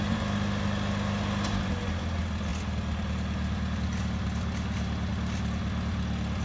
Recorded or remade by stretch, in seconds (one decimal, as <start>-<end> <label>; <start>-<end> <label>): 0.0-6.4 recorded